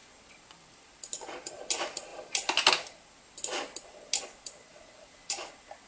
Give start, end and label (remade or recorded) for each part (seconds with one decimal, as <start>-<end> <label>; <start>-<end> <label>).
0.0-5.9 recorded